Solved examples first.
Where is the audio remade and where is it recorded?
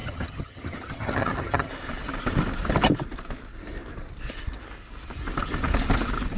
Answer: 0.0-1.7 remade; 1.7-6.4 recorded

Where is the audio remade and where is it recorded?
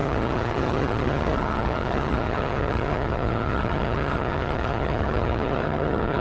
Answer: 0.0-6.2 remade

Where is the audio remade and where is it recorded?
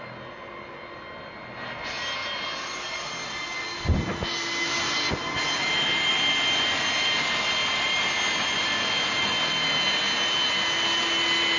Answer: 0.0-11.6 recorded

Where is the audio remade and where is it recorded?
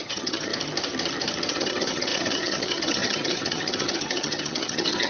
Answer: 0.0-0.5 remade; 0.5-1.5 recorded; 1.5-5.1 remade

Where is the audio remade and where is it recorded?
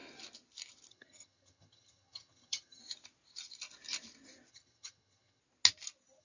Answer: 0.0-0.9 recorded; 0.9-2.8 remade; 2.8-4.5 recorded; 4.5-5.4 remade; 5.4-6.2 recorded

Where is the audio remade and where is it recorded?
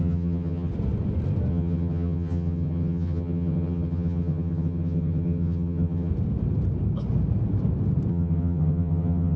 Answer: 0.0-0.7 remade; 0.7-1.5 recorded; 1.5-6.1 remade; 6.1-8.1 recorded; 8.1-9.4 remade